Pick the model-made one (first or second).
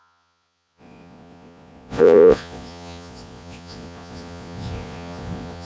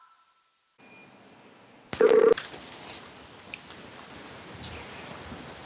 first